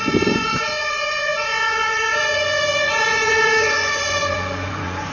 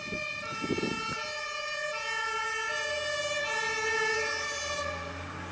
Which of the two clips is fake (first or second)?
first